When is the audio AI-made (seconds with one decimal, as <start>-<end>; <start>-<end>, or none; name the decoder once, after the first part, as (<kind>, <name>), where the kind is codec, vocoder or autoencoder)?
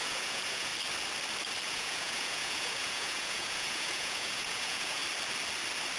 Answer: 0.0-0.7 (vocoder, Vocos); 1.7-5.0